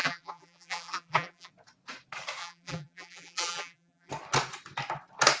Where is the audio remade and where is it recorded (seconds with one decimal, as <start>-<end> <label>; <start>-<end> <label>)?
0.0-1.5 remade; 1.5-2.4 recorded; 2.4-4.1 remade; 4.1-5.4 recorded